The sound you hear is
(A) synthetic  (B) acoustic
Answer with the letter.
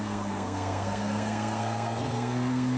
A